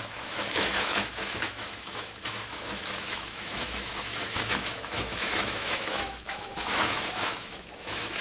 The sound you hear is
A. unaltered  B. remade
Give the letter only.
B